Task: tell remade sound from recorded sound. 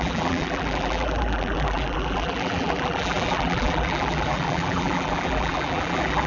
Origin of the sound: remade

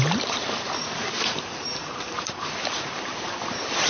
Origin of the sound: remade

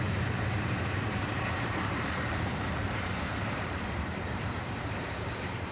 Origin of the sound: remade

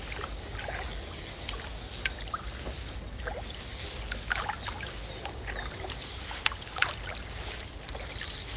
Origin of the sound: recorded